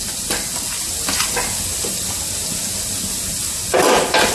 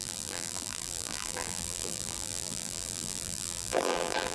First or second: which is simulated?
second